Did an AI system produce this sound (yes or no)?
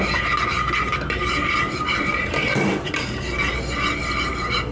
no